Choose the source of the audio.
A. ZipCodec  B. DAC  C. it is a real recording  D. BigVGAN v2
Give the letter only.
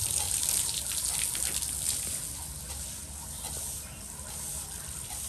C